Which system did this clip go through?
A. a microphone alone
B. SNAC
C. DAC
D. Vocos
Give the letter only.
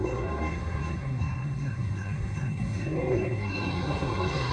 B